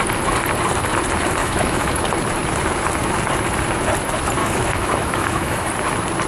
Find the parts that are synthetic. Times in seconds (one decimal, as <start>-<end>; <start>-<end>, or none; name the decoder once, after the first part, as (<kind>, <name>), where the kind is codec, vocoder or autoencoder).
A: 1.4-2.0 (autoencoder, DAC-VAE); 4.4-5.7